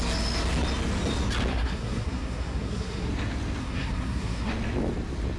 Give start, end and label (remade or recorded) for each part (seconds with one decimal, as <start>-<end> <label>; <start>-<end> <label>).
0.0-1.5 recorded; 1.5-3.1 remade; 3.1-3.6 recorded; 3.6-4.5 remade; 4.5-5.4 recorded